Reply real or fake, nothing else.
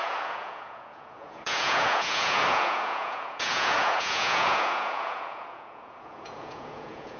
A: fake